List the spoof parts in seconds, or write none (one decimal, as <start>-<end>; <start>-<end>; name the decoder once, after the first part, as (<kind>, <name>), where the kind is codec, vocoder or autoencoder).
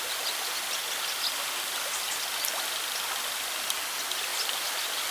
0.8-3.9 (vocoder, BigVGAN v2); 4.3-5.1